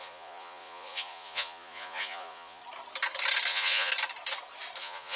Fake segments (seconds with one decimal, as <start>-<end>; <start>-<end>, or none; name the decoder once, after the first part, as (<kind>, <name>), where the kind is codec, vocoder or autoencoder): 0.0-2.6 (vocoder, Vocos); 3.5-3.9; 4.8-5.2